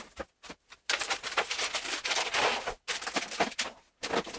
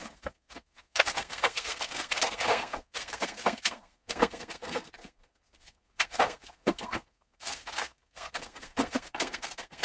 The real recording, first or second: first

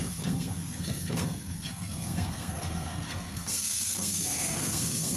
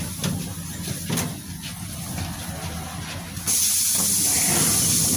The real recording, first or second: second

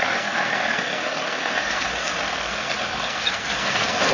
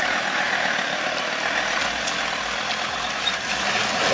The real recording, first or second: second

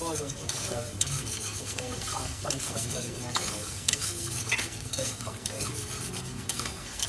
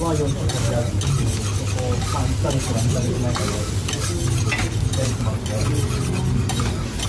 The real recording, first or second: second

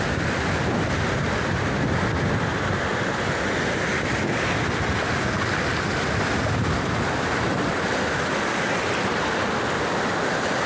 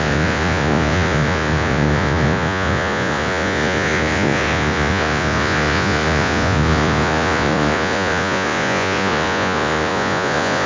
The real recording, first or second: first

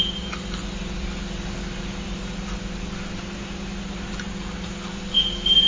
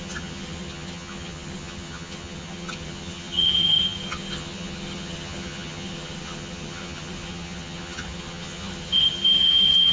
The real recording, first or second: first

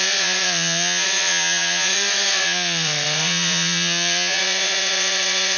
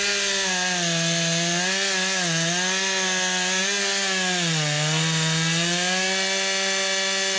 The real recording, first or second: second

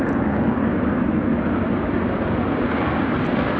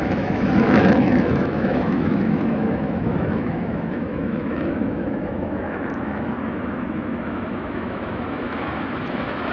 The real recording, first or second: first